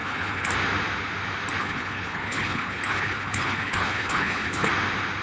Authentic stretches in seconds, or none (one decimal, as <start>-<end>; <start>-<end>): 0.5-1.6; 4.7-5.2